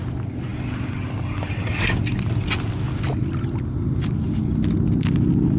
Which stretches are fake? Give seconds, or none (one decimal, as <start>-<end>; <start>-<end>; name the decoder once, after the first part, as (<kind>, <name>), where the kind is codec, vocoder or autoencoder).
none